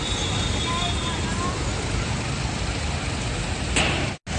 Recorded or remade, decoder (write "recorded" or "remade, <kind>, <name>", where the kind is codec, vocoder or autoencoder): recorded